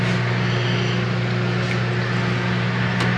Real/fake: real